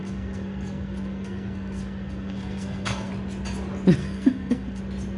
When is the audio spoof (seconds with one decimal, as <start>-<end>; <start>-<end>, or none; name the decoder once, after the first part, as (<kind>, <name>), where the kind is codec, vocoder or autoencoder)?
0.0-3.1 (codec, SNAC); 4.0-4.8